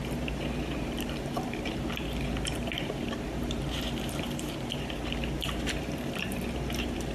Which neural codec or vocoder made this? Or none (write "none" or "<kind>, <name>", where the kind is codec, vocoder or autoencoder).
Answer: vocoder, BigVGAN v2